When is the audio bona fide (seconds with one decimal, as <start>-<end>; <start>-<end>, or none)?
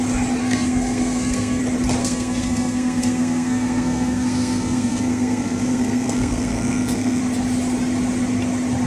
0.0-0.4; 1.6-2.0; 7.2-8.9